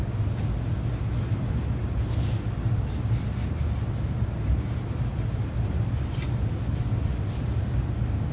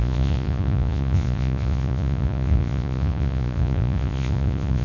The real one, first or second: first